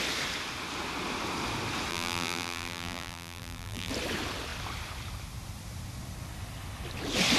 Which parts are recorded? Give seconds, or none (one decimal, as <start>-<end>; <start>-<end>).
0.0-1.9; 3.9-7.4